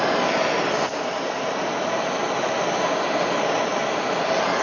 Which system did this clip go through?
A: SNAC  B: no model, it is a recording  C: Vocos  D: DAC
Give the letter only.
B